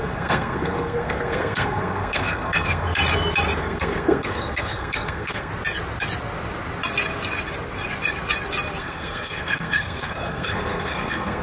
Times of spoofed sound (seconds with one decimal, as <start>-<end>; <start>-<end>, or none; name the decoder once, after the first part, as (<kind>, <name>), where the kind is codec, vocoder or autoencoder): 0.0-3.0 (codec, SNAC); 3.6-5.5; 8.8-11.4